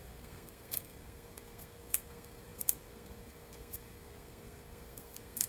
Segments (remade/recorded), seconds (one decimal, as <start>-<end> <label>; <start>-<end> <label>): 0.0-5.5 remade